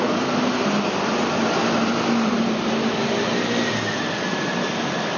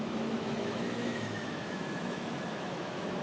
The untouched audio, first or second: first